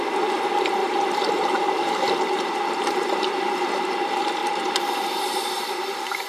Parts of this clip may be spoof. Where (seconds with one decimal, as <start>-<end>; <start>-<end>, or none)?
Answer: 0.0-6.3